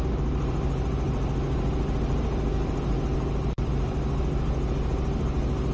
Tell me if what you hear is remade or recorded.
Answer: remade